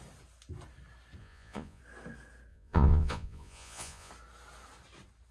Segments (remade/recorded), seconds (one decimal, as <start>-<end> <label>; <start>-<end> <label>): 0.0-1.2 recorded; 1.2-1.8 remade; 1.8-2.5 recorded; 2.5-4.1 remade; 4.1-5.3 recorded